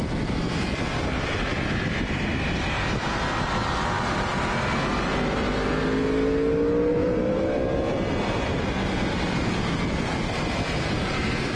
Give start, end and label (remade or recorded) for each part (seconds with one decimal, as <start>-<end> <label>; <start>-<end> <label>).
0.0-0.9 recorded; 0.9-1.6 remade; 1.6-6.9 recorded; 6.9-11.6 remade